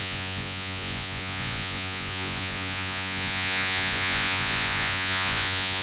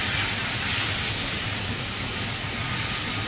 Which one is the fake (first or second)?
first